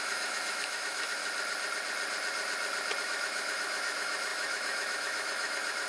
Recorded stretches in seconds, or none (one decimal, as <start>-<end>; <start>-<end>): 1.2-3.0